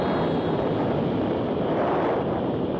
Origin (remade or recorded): recorded